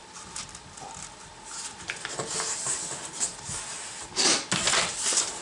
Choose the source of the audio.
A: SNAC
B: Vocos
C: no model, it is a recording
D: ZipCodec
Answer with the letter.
C